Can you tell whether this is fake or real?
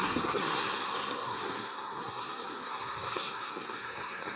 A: fake